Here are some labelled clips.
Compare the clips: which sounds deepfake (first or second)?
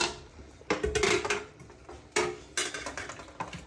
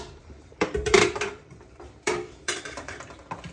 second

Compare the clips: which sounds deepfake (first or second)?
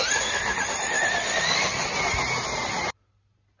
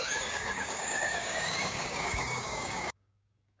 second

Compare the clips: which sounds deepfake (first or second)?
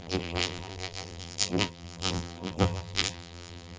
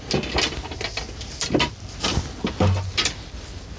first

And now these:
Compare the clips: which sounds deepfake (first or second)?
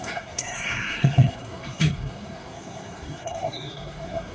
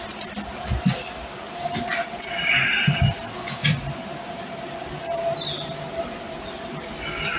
first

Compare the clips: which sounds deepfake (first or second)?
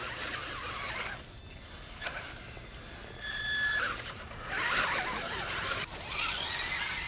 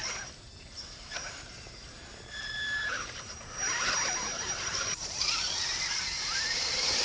second